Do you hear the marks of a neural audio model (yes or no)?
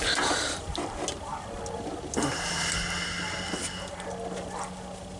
no